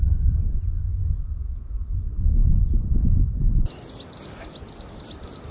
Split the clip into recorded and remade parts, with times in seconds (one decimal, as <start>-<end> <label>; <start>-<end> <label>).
0.0-5.5 recorded